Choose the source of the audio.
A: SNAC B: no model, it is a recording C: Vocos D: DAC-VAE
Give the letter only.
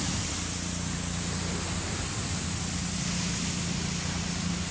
B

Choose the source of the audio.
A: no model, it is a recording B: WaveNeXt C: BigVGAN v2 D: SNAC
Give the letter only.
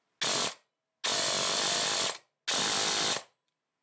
A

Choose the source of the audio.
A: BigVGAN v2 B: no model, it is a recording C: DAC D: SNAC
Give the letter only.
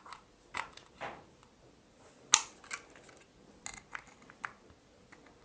B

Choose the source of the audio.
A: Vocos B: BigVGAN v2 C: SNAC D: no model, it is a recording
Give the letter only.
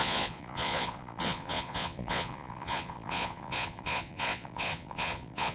A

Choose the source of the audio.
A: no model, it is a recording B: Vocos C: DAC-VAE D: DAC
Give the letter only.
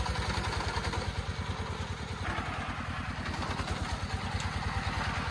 A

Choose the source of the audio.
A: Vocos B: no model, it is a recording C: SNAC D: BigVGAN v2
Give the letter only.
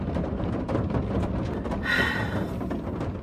D